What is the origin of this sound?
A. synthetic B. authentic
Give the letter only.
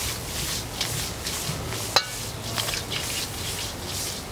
B